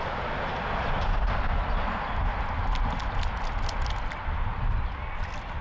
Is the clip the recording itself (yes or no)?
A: yes